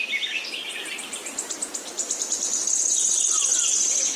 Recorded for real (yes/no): yes